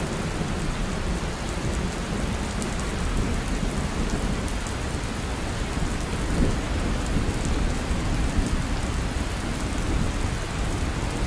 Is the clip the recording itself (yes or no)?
yes